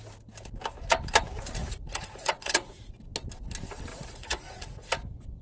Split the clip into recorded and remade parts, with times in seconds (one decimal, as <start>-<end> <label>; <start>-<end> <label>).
0.0-1.6 recorded; 1.6-2.9 remade; 2.9-3.9 recorded; 3.9-4.9 remade; 4.9-5.4 recorded